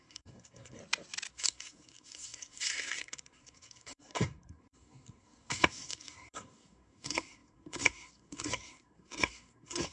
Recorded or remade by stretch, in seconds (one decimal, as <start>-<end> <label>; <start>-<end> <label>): 0.0-0.8 remade; 0.8-1.3 recorded; 1.3-9.9 remade